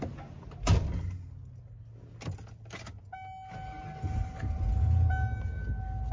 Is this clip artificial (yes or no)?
no